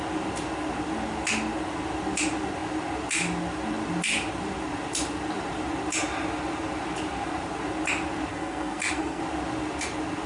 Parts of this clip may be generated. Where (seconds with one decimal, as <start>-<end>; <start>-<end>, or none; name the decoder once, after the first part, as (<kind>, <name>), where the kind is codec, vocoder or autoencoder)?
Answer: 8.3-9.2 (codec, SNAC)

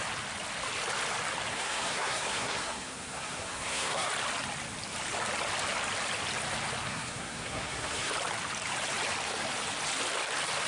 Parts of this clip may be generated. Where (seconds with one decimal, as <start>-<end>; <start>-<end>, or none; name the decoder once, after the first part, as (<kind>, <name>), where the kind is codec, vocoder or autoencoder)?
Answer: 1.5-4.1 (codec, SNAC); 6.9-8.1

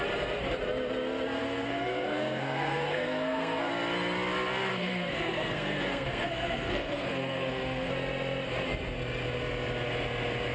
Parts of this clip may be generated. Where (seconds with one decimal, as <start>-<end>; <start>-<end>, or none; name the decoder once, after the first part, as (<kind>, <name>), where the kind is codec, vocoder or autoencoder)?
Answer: 1.4-3.7 (codec, SNAC); 4.7-7.9

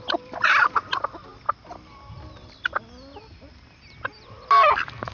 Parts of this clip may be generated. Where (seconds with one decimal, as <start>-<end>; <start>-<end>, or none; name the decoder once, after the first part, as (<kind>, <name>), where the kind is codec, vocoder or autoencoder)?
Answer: none

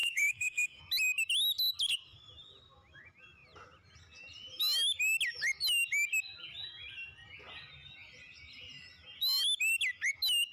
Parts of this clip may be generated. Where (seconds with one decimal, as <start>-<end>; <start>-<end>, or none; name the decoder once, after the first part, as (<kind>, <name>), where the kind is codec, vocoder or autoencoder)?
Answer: 0.0-0.8 (codec, SNAC)

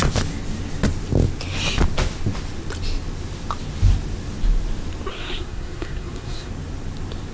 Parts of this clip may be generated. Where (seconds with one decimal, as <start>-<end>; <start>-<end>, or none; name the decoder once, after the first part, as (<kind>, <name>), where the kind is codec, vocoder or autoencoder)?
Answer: 5.1-6.5 (codec, SNAC)

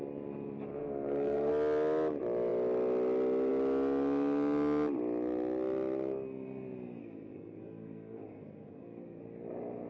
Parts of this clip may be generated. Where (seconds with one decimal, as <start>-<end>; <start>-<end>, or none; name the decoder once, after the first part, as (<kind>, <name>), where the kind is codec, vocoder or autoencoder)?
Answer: 0.8-1.5 (codec, SNAC); 7.0-9.2

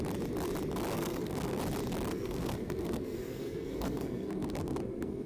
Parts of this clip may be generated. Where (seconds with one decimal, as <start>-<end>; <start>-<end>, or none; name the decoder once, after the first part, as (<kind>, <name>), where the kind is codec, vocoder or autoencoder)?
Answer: 0.9-1.6 (codec, SNAC); 2.1-5.3